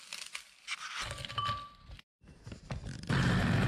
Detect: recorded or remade recorded